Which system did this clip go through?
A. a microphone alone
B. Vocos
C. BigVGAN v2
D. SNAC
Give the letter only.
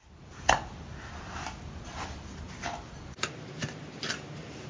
A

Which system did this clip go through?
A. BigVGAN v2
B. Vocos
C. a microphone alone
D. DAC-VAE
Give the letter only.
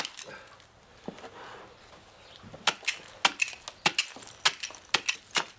C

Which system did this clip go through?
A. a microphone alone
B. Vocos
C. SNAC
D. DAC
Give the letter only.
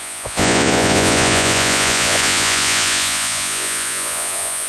B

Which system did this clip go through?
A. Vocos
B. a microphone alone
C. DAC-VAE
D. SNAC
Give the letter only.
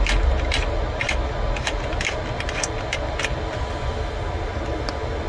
B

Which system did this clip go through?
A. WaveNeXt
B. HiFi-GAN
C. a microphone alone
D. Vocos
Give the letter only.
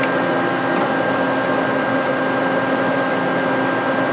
C